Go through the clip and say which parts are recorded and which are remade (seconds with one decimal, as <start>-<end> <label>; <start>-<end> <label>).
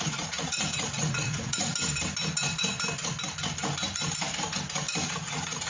0.0-1.7 remade; 1.7-5.1 recorded; 5.1-5.7 remade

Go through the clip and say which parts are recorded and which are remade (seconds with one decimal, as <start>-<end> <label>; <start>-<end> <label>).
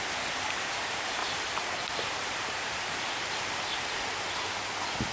0.0-1.2 recorded; 1.2-3.0 remade; 3.0-5.1 recorded